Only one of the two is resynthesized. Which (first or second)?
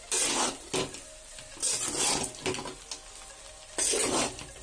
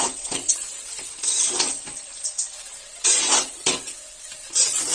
second